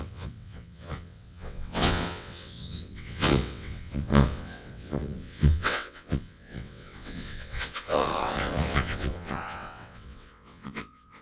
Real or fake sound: fake